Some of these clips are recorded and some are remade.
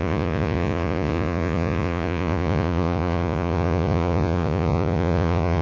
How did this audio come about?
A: remade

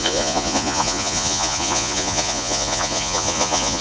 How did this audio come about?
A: remade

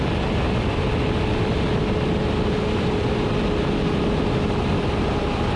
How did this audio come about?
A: recorded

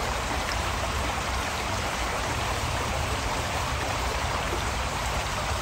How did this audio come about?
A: remade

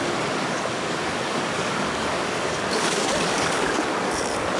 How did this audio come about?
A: remade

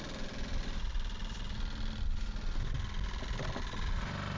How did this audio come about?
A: recorded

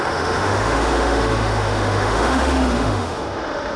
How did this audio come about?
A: remade